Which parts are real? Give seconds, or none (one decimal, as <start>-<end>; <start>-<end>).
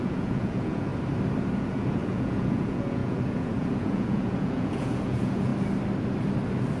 0.9-1.6; 5.5-6.8